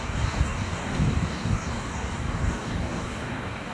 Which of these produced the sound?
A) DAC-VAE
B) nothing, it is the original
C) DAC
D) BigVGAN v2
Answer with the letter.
C